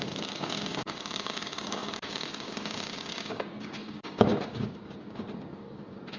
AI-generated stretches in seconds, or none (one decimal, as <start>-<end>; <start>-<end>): 0.0-6.2